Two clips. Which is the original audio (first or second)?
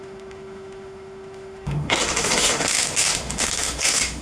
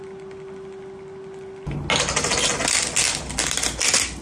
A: second